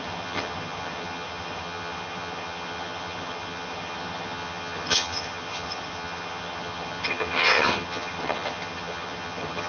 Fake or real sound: fake